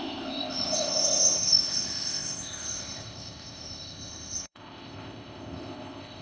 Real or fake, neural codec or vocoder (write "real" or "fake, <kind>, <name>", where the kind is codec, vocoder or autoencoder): fake, codec, ZipCodec